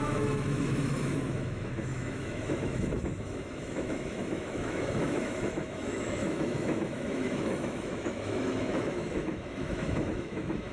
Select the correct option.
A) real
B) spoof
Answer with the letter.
B